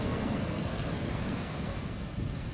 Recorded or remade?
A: remade